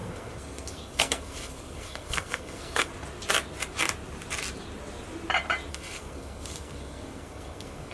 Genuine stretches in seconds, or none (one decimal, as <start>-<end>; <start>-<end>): 2.9-5.7